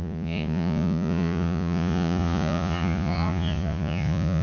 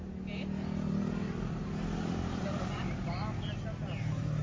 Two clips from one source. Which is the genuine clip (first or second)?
second